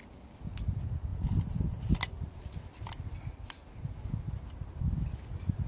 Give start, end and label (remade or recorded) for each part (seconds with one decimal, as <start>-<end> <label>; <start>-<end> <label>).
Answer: 0.0-5.7 recorded